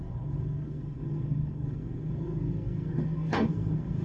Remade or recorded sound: remade